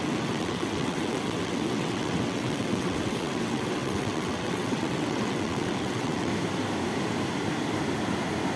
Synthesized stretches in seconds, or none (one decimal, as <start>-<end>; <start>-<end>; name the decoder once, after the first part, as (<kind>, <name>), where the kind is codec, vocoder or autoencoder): 0.0-6.3 (vocoder, WaveNeXt)